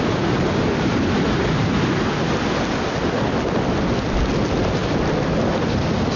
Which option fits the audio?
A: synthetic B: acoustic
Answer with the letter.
B